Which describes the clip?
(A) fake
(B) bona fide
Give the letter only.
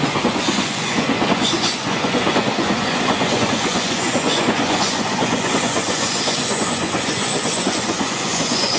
A